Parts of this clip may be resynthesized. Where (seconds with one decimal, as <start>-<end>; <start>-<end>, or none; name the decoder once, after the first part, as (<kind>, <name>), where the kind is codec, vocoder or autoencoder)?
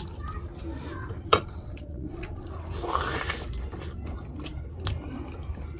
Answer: 1.0-2.5 (vocoder, Vocos)